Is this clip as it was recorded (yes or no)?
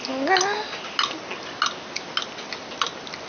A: yes